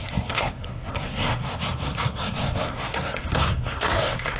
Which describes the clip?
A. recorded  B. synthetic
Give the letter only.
B